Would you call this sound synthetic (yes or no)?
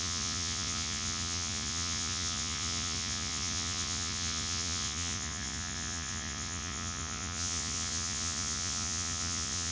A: yes